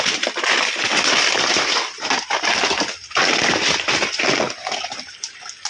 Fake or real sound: real